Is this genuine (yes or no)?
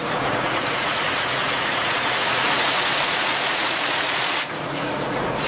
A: no